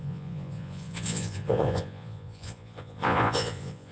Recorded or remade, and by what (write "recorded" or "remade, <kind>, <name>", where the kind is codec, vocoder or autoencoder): remade, vocoder, Vocos